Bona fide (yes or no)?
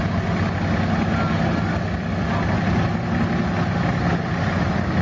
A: yes